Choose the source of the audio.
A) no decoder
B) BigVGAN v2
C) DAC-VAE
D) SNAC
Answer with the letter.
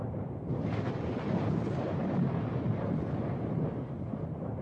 B